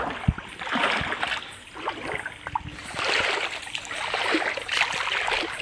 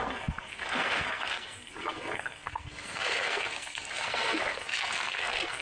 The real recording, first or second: first